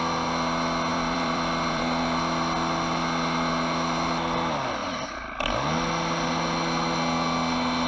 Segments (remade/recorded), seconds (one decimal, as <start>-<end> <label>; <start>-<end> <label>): 0.0-0.9 recorded; 0.9-1.8 remade; 1.8-4.8 recorded; 4.8-5.4 remade; 5.4-7.9 recorded